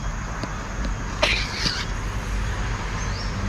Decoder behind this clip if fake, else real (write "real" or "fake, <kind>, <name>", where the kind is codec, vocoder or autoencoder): real